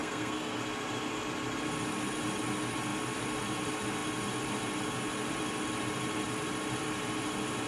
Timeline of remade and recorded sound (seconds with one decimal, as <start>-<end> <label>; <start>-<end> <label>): 0.0-0.6 remade; 0.6-7.7 recorded